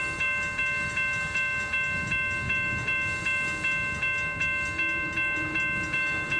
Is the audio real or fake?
real